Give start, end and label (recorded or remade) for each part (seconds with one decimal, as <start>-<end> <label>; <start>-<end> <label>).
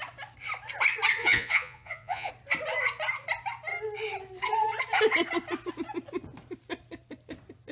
0.0-1.2 recorded; 1.2-2.3 remade; 2.3-7.7 recorded